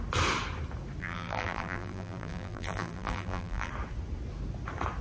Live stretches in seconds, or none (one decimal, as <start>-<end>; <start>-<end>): 0.0-1.0; 3.7-5.0